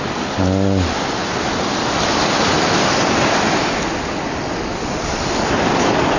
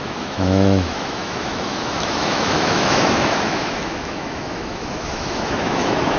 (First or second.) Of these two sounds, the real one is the first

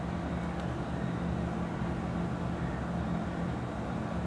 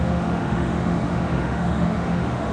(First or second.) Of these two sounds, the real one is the first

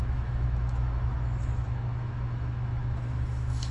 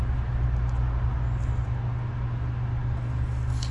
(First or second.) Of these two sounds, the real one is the second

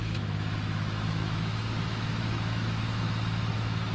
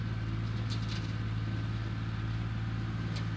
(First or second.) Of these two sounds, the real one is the second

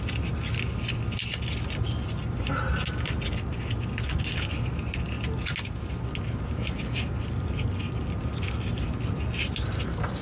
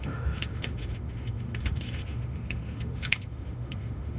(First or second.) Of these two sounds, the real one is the first